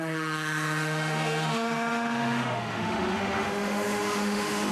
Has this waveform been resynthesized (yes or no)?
yes